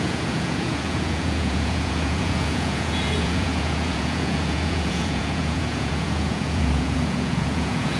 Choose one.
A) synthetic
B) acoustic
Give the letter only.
A